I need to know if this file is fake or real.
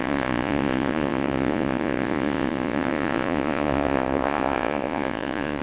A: fake